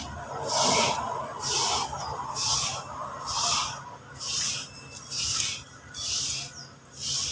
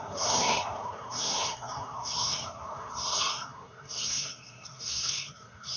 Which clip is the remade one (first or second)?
second